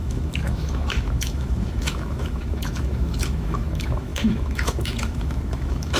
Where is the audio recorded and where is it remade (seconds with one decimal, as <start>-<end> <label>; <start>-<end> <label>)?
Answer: 0.0-6.0 remade